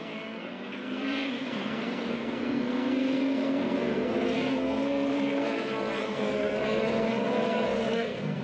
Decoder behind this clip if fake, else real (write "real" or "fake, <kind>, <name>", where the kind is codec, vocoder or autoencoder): fake, codec, SNAC